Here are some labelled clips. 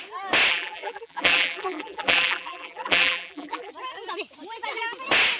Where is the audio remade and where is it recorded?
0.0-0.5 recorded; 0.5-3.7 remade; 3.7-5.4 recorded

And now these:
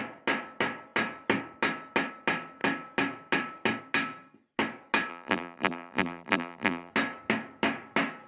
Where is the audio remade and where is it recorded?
0.0-5.1 recorded; 5.1-6.9 remade; 6.9-8.3 recorded